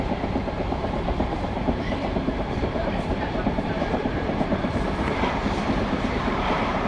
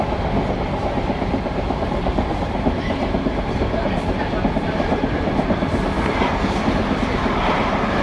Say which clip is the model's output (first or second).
first